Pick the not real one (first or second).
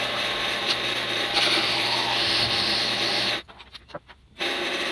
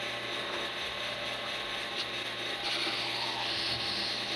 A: first